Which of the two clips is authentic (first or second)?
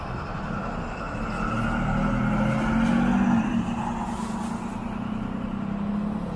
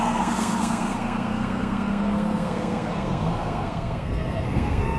first